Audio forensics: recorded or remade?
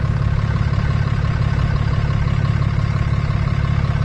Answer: recorded